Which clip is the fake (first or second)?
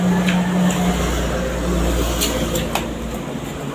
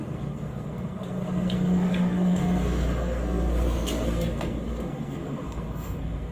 second